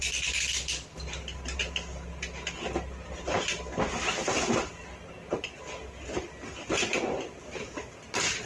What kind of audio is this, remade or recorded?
recorded